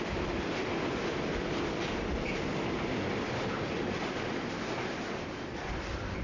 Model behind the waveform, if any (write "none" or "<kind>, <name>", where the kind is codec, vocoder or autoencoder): none